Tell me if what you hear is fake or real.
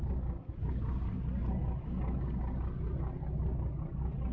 real